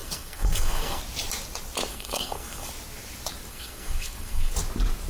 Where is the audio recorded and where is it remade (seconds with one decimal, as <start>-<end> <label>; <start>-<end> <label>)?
0.0-1.0 remade; 1.0-1.9 recorded; 1.9-2.7 remade; 2.7-3.5 recorded; 3.5-4.5 remade; 4.5-5.1 recorded